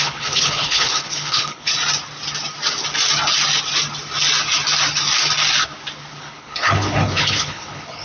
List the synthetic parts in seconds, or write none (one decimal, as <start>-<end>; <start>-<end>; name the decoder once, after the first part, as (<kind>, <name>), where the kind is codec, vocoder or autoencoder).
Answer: 0.0-1.7 (codec, HILCodec); 6.2-8.0